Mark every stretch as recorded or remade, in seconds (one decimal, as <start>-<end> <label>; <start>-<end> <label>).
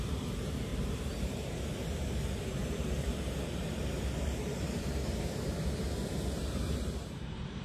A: 0.0-5.8 remade; 5.8-6.4 recorded; 6.4-7.6 remade